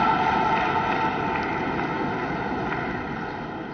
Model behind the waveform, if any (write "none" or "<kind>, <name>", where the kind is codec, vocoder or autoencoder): none